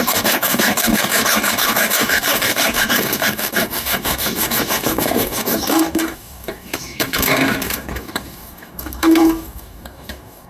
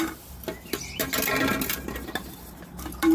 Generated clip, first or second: first